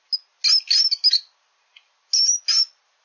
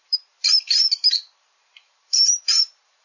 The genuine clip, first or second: first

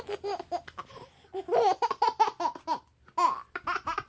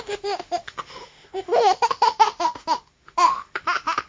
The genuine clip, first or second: first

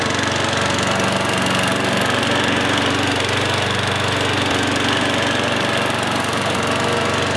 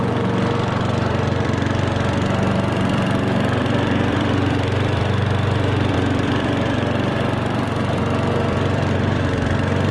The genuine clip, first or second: first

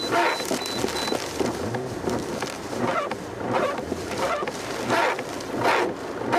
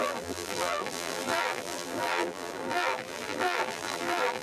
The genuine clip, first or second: first